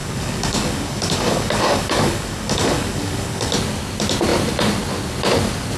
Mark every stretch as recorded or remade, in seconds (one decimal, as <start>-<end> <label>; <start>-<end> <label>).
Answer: 0.0-3.5 remade; 3.5-5.8 recorded